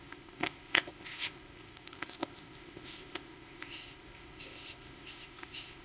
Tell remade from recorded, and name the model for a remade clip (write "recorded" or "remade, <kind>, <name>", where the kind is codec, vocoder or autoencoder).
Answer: remade, codec, ZipCodec